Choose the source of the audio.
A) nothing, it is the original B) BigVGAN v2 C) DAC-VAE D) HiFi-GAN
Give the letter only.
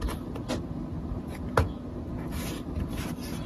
A